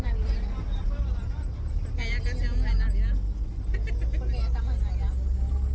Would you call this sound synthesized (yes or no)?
no